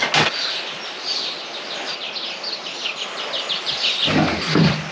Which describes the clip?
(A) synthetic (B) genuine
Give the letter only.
B